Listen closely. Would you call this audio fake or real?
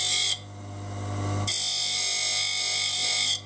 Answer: real